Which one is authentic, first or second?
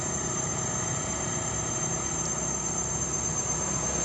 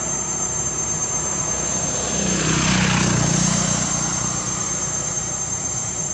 first